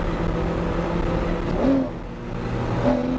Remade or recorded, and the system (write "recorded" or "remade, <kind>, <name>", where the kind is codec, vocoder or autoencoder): recorded